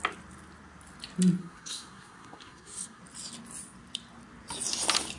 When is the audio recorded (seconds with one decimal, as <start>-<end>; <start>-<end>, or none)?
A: 0.0-1.4; 3.0-5.2